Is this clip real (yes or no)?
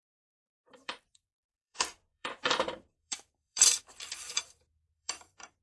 no